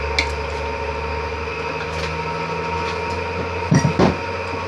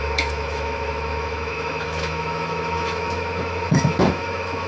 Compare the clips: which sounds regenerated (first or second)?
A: second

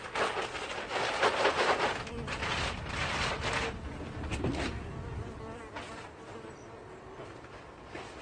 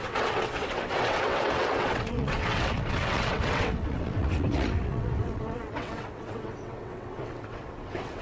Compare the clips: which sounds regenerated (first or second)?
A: second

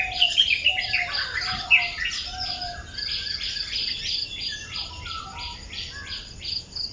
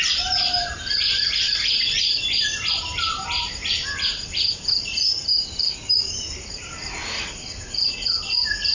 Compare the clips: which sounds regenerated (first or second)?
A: second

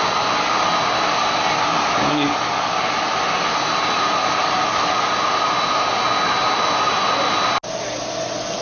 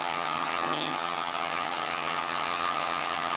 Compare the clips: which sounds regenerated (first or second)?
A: second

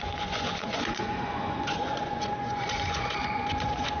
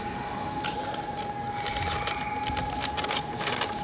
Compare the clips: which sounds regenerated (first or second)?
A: first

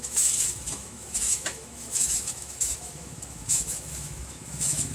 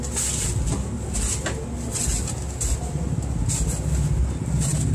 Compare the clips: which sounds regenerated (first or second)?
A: first